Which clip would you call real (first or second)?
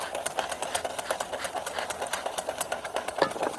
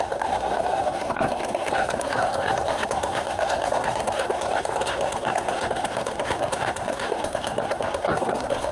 first